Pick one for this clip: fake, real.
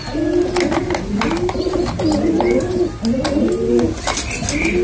real